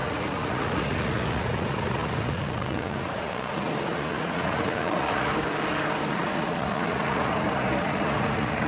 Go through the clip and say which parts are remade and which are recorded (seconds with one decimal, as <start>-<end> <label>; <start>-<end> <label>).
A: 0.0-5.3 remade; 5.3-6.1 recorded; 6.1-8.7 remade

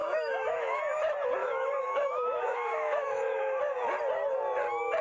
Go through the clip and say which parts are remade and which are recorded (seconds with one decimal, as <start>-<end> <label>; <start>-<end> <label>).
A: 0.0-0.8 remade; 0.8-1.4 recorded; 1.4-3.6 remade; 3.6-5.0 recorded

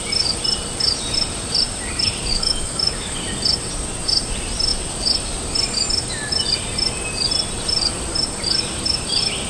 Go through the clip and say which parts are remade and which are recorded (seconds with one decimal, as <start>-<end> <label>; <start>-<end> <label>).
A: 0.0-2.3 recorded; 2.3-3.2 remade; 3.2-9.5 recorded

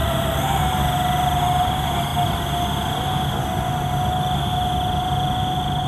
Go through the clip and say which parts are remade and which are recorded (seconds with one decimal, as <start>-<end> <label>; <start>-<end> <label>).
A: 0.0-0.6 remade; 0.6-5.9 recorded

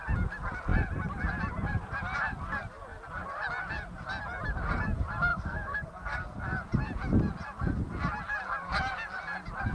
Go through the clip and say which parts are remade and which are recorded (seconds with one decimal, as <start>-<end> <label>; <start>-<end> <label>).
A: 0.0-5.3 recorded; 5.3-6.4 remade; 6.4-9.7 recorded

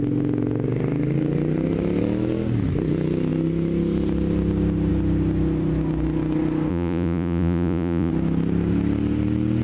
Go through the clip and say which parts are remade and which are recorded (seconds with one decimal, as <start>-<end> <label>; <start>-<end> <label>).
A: 0.0-6.7 recorded; 6.7-8.1 remade; 8.1-9.6 recorded

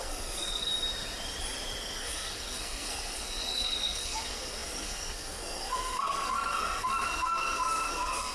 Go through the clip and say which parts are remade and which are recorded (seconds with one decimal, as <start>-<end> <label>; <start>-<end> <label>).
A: 0.0-0.7 remade; 0.7-2.0 recorded; 2.0-8.3 remade